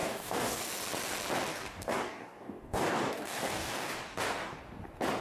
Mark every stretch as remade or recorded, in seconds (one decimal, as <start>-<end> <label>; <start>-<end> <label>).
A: 0.0-0.6 remade; 0.6-1.5 recorded; 1.5-4.6 remade; 4.6-5.2 recorded